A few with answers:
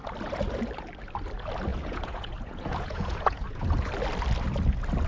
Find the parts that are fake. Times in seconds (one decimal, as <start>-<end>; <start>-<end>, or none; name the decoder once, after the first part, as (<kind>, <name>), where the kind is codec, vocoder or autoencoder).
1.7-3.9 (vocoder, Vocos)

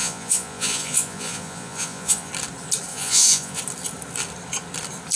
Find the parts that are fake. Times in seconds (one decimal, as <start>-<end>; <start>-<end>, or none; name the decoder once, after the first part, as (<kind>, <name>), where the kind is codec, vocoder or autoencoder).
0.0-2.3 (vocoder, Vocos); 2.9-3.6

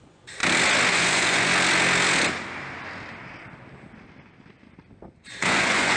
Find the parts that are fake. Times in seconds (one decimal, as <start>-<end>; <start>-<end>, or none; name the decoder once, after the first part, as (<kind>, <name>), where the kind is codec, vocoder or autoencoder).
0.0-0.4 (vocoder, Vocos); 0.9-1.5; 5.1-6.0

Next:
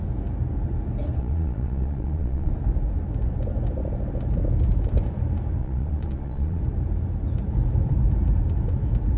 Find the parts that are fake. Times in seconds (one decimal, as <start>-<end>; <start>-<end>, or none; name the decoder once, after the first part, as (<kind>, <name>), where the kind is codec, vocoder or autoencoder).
1.2-2.5 (vocoder, Vocos); 5.6-6.6

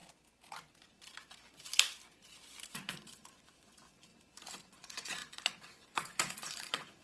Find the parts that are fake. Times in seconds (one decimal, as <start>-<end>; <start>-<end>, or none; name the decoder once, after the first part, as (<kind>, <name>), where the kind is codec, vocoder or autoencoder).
2.7-4.1 (vocoder, Vocos); 4.6-7.0

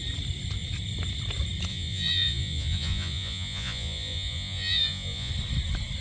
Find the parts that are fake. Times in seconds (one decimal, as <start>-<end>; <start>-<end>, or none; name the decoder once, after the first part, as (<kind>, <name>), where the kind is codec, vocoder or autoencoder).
1.7-5.3 (vocoder, Vocos)

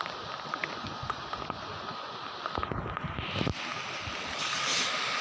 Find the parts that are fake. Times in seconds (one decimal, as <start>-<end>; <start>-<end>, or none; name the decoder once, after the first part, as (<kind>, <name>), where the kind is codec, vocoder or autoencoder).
0.6-2.2 (vocoder, Vocos)

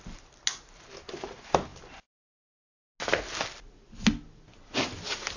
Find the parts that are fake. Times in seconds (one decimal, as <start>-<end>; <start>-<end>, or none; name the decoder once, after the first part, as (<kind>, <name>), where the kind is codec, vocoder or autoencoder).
none